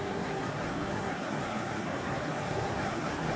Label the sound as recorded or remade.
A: remade